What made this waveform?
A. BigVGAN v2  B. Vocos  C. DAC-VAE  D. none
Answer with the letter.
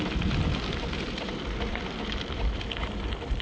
A